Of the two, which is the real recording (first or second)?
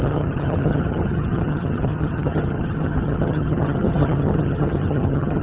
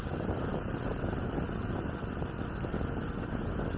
second